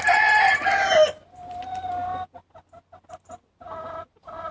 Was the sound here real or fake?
real